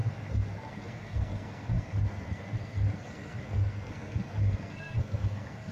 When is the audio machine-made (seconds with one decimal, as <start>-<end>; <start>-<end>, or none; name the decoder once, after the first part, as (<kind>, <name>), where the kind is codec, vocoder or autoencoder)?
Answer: 0.0-5.7 (codec, SNAC)